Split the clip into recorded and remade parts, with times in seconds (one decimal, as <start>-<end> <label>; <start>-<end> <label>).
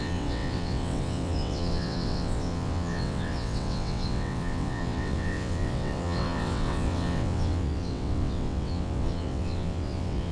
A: 0.0-10.3 remade